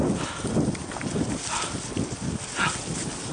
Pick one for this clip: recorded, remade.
recorded